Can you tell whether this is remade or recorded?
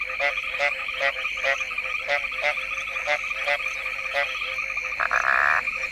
recorded